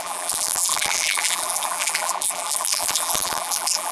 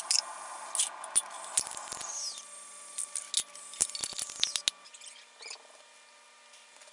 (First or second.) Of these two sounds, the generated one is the first